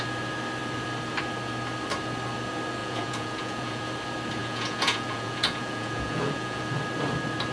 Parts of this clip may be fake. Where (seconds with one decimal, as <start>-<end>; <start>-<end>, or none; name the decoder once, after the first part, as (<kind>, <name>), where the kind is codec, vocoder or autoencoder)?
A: 2.8-3.8 (vocoder, Vocos); 4.4-6.6